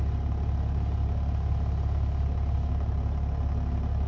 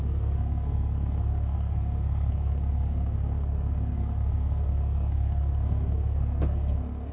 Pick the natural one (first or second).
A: first